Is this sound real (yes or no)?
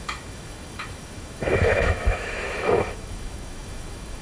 no